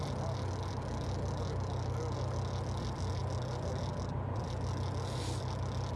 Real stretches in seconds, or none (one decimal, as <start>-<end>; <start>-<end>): 0.0-6.0